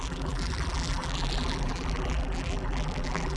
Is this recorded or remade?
remade